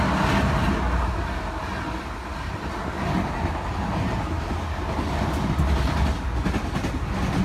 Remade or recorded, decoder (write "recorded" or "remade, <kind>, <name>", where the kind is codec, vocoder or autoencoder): recorded